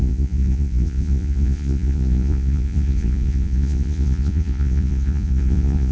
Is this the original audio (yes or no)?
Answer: no